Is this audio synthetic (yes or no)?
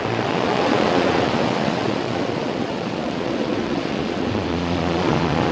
yes